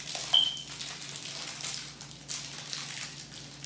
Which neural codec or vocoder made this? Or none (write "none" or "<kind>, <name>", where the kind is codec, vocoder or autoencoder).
none